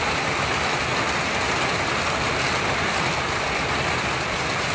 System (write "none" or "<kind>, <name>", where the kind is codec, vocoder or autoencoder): none